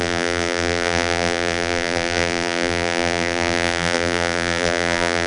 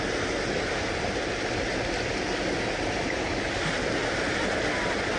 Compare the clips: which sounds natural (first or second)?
second